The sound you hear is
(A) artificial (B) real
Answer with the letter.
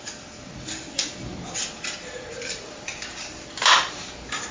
B